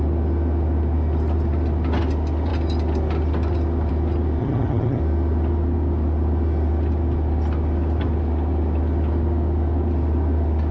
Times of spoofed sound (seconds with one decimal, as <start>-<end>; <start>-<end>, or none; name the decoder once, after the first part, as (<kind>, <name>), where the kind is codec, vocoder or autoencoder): 4.4-5.0 (vocoder, HiFi-GAN)